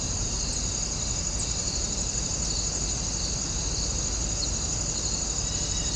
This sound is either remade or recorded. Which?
recorded